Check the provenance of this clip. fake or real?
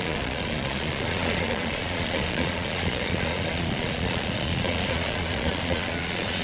fake